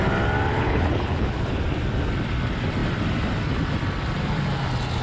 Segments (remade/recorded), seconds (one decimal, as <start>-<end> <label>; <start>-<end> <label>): 0.0-0.5 recorded; 0.5-1.6 remade; 1.6-5.0 recorded